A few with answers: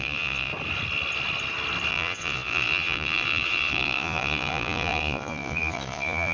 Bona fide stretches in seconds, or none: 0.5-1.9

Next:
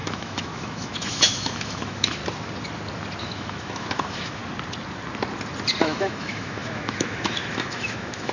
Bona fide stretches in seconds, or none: 2.2-3.2; 4.4-5.8

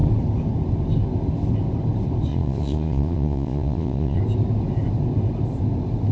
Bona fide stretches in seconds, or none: 0.0-2.3; 4.2-6.1

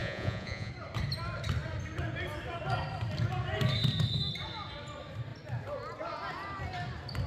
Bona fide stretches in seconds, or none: 0.7-7.3

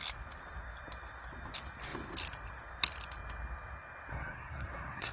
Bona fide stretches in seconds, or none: 0.0-4.1